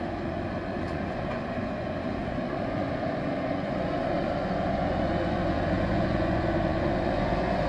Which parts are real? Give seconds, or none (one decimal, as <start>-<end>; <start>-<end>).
none